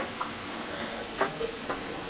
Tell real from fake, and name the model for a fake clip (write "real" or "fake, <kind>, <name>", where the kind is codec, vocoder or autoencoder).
fake, codec, SNAC